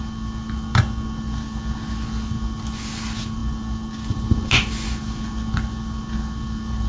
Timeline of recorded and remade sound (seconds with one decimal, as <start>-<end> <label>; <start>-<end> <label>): 0.0-6.9 recorded

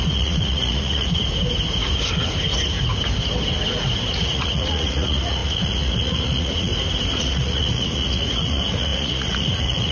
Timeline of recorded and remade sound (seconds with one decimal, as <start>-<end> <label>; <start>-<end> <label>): 0.0-1.2 remade; 1.2-4.1 recorded; 4.1-6.7 remade; 6.7-7.2 recorded; 7.2-9.9 remade

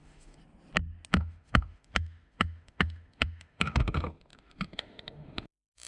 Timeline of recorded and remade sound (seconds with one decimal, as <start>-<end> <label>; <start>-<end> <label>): 0.0-0.4 remade; 0.4-1.1 recorded; 1.1-5.9 remade

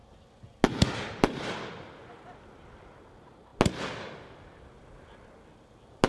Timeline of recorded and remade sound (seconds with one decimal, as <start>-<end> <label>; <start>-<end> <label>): 0.0-6.1 recorded